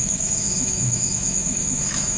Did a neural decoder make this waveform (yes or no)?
yes